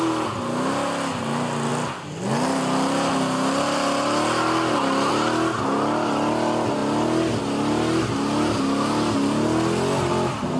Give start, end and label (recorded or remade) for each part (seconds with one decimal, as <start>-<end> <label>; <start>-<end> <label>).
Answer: 0.0-10.6 recorded